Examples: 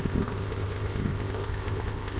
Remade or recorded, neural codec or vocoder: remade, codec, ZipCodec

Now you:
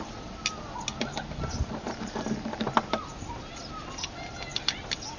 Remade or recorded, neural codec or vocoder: recorded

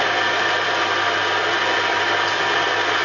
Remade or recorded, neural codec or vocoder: recorded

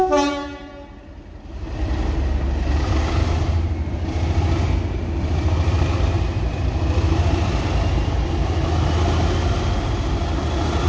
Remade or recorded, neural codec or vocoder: recorded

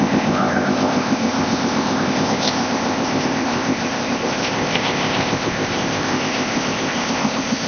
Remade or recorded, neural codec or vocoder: remade, codec, ZipCodec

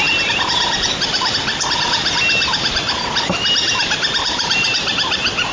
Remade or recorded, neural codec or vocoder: recorded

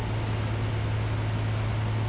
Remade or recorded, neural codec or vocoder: recorded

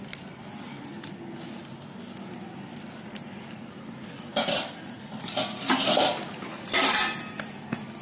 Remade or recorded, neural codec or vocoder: recorded